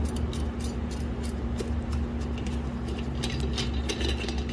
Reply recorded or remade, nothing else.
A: recorded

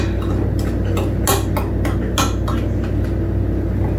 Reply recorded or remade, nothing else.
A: recorded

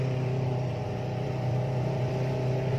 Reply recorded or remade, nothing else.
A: remade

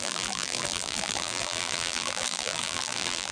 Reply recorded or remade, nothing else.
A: remade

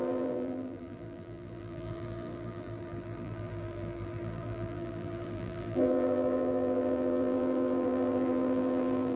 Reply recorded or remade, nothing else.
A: remade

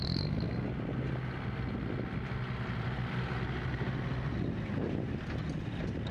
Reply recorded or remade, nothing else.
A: recorded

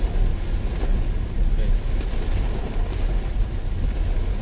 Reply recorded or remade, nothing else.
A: recorded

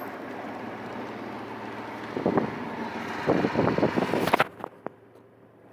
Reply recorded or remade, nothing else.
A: recorded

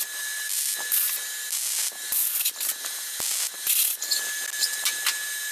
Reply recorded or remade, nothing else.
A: recorded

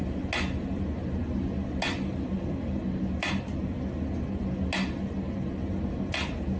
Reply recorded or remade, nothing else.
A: recorded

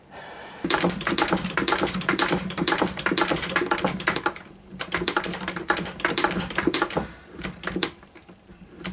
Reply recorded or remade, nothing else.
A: remade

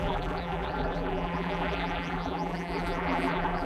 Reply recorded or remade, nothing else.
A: remade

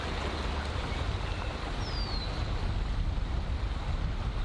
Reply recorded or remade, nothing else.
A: recorded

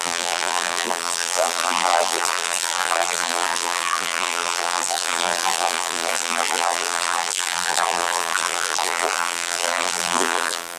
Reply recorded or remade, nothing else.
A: remade